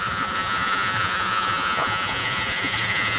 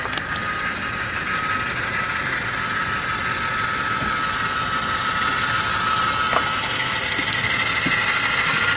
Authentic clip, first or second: second